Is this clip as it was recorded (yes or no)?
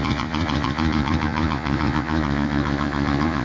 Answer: no